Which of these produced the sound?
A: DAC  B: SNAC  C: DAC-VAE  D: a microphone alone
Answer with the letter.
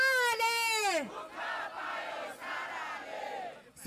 D